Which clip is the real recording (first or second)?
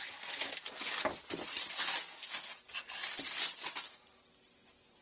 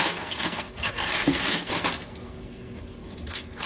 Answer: first